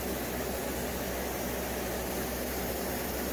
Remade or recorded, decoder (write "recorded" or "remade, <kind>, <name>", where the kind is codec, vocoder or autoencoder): recorded